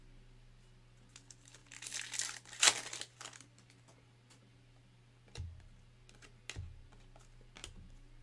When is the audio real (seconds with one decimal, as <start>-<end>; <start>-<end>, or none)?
0.0-8.2